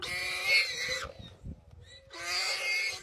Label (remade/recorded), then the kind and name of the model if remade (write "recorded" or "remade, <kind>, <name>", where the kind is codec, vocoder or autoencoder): recorded